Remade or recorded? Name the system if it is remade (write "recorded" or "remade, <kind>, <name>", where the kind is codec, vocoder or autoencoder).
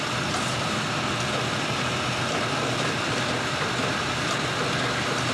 recorded